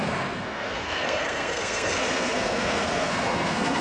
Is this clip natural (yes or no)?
no